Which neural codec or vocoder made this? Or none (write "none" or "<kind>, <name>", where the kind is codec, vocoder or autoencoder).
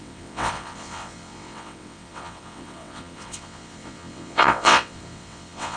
vocoder, WaveNeXt